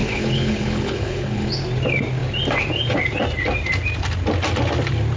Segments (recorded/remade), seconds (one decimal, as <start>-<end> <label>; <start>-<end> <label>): 0.0-1.5 remade; 1.5-5.2 recorded